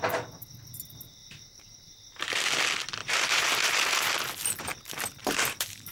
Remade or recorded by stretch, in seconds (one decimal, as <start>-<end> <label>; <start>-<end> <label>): 0.0-1.2 recorded; 1.2-2.5 remade; 2.5-3.0 recorded; 3.0-4.0 remade; 4.0-5.2 recorded; 5.2-5.9 remade